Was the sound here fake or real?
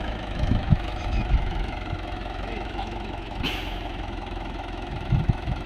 fake